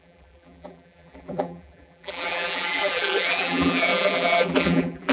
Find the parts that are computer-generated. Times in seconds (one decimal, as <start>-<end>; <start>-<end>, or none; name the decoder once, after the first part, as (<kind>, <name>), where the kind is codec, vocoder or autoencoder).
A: 0.0-5.1 (vocoder, BigVGAN v2)